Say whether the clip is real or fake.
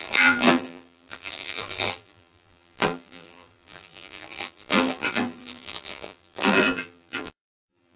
fake